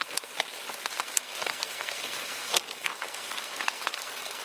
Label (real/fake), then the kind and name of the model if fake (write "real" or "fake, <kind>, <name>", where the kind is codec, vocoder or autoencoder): fake, codec, SNAC